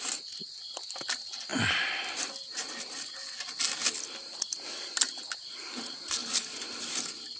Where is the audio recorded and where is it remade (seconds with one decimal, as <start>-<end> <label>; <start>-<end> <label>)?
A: 0.0-7.4 recorded

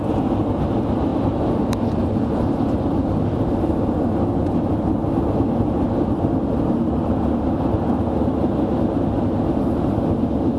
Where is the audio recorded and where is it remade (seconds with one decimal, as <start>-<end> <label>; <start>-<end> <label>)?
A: 0.0-10.6 recorded

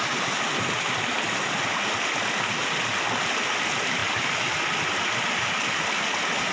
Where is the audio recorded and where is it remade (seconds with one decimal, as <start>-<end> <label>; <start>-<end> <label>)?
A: 0.0-6.5 recorded

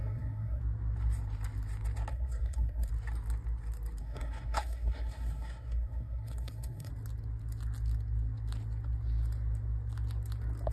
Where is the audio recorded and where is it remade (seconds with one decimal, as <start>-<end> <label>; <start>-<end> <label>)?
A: 0.0-0.6 remade; 0.6-2.1 recorded; 2.1-2.9 remade; 2.9-4.0 recorded; 4.0-6.9 remade; 6.9-10.7 recorded

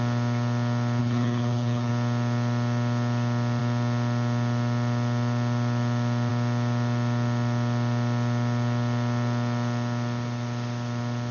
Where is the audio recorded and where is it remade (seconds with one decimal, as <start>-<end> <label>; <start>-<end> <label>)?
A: 0.0-1.0 recorded; 1.0-1.9 remade; 1.9-11.3 recorded